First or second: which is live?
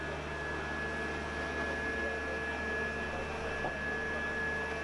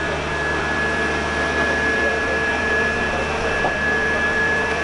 first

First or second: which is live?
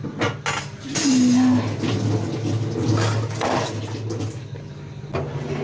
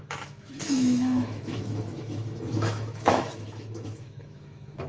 first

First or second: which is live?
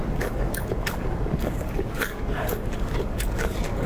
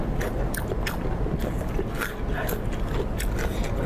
second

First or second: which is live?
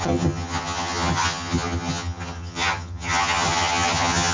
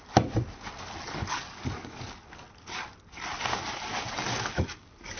second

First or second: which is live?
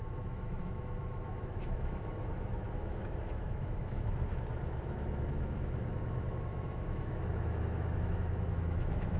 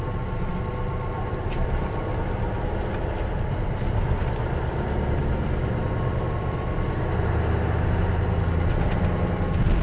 second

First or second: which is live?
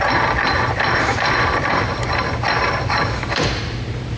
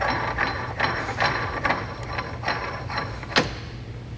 second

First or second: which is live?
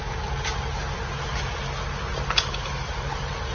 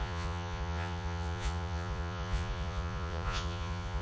first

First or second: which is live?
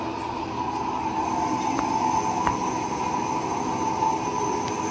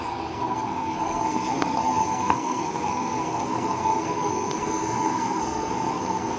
first